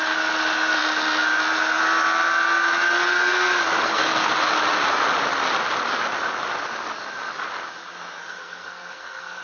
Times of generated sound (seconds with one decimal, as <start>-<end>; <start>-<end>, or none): 3.8-4.3; 8.2-9.4